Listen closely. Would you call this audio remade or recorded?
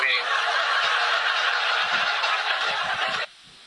recorded